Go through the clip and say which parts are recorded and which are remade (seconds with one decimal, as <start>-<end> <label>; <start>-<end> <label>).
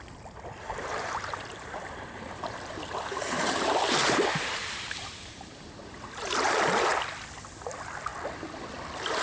0.0-0.9 recorded; 0.9-6.0 remade; 6.0-9.2 recorded